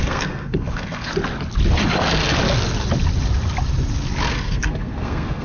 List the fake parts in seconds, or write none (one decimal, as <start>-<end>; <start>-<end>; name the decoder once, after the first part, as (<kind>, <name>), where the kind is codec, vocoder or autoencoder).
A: 0.0-1.1 (codec, SNAC); 4.3-5.4